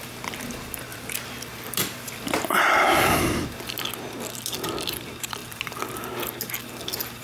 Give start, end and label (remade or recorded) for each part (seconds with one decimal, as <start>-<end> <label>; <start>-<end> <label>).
0.0-0.9 recorded; 0.9-2.1 remade; 2.1-5.4 recorded; 5.4-6.4 remade; 6.4-7.2 recorded